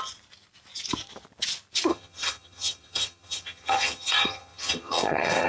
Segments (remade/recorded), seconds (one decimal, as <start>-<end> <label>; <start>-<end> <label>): 0.0-1.9 recorded; 1.9-5.5 remade